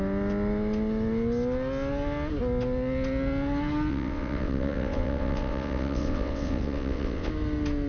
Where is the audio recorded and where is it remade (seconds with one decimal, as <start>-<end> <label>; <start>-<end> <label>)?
0.0-3.9 recorded; 3.9-7.3 remade; 7.3-7.9 recorded